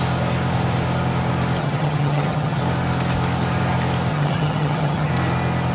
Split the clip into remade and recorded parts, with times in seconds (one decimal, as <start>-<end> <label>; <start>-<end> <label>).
0.0-1.6 recorded; 1.6-2.6 remade; 2.6-4.1 recorded; 4.1-5.1 remade; 5.1-5.7 recorded